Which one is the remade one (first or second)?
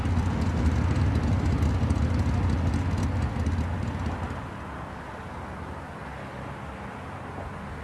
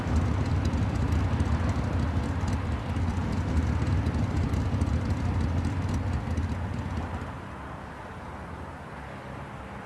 second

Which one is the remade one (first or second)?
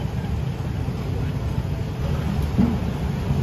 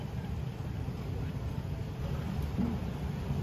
second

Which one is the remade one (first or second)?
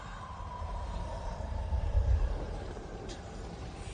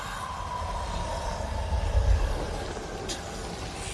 first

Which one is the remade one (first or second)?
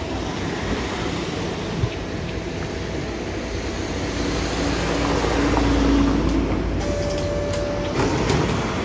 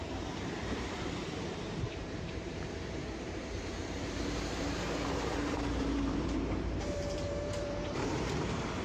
second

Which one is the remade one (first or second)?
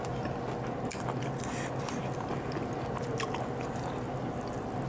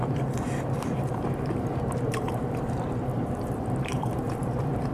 second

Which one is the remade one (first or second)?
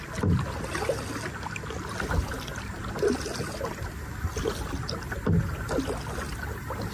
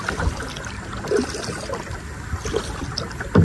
second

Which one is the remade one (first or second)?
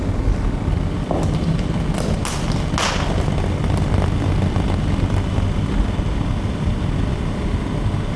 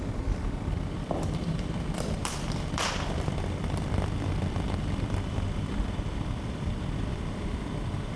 second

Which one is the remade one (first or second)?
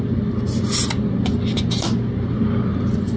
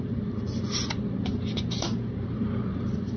second